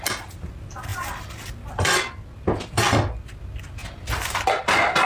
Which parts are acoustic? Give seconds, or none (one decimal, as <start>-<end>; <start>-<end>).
0.0-5.0